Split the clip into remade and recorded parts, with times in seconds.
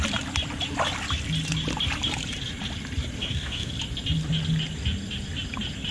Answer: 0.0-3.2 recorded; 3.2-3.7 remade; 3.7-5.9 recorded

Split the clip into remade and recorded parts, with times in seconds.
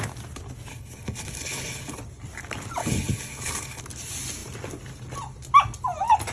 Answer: 0.0-0.7 recorded; 0.7-2.0 remade; 2.0-2.8 recorded; 2.8-3.8 remade; 3.8-6.3 recorded